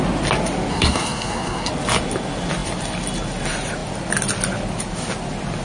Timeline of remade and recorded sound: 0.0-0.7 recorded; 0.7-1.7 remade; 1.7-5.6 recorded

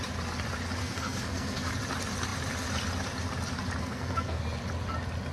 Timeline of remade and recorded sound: 0.0-0.8 recorded; 0.8-1.7 remade; 1.7-3.8 recorded; 3.8-4.4 remade; 4.4-5.3 recorded